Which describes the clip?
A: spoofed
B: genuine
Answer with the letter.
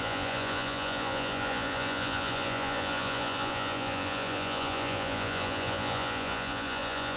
A